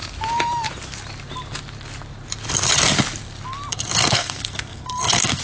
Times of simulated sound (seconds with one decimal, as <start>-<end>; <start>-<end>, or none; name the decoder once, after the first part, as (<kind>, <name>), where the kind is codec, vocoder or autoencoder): 3.7-5.4 (codec, SNAC)